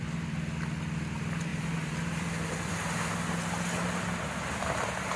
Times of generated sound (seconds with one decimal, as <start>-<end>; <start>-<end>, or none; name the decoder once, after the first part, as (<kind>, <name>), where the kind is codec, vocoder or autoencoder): 1.5-2.7 (vocoder, BigVGAN v2)